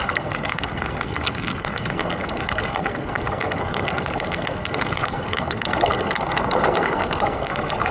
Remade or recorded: remade